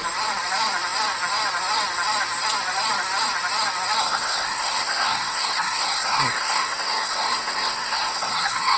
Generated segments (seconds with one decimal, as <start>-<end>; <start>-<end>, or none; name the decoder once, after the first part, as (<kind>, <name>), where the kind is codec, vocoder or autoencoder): 4.0-8.8 (codec, SNAC)